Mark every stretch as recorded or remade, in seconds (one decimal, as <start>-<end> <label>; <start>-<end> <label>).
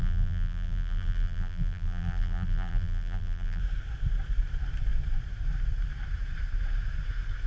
0.0-3.6 remade; 3.6-7.5 recorded